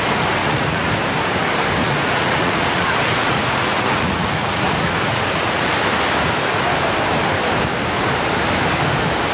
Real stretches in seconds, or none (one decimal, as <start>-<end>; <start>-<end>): 0.0-0.4; 0.9-1.8; 5.7-9.3